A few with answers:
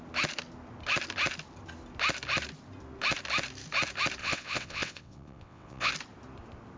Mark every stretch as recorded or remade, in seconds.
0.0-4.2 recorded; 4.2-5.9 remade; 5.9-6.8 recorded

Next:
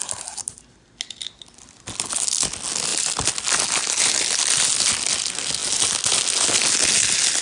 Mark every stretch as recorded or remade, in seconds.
0.0-7.4 recorded

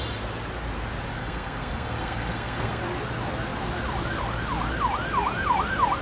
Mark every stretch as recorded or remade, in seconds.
0.0-1.2 recorded; 1.2-2.8 remade; 2.8-6.0 recorded

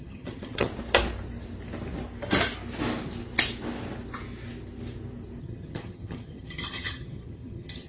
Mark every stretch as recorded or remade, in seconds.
0.0-0.7 remade; 0.7-5.4 recorded; 5.4-7.9 remade